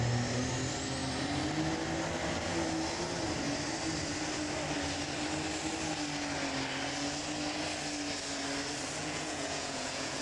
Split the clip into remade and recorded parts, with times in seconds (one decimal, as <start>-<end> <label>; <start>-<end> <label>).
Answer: 0.0-9.0 recorded; 9.0-10.2 remade